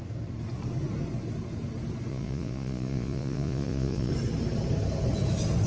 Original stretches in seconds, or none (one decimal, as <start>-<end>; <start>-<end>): 0.0-2.1; 4.1-5.7